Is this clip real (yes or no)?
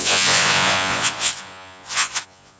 no